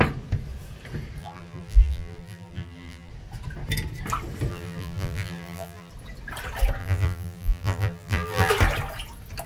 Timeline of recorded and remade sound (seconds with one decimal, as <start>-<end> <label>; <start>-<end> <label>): 0.0-1.2 recorded; 1.2-3.1 remade; 3.1-4.5 recorded; 4.5-5.9 remade; 5.9-6.8 recorded; 6.8-8.5 remade; 8.5-9.5 recorded